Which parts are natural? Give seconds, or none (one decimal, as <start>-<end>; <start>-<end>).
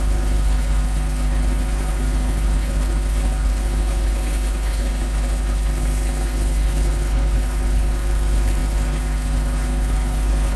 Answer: none